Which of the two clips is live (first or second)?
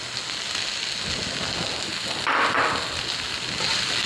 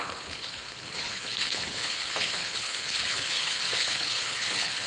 first